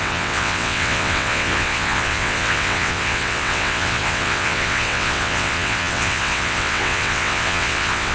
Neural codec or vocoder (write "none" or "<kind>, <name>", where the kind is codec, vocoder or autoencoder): vocoder, WaveNeXt